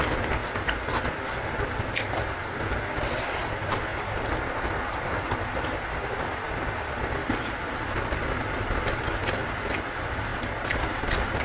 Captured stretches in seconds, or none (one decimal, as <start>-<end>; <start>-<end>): 0.0-11.4